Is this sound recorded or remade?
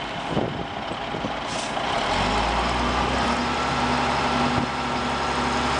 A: recorded